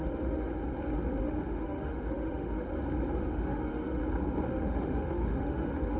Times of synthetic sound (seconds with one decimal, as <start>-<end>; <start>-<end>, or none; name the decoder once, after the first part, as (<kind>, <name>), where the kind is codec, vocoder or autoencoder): 0.0-0.5 (autoencoder, DAC-VAE); 1.2-2.7; 3.2-4.0; 4.5-6.0